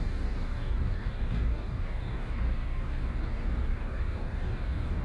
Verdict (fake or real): fake